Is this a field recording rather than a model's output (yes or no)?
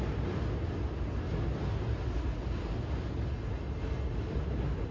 yes